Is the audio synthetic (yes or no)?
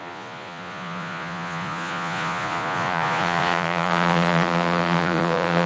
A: yes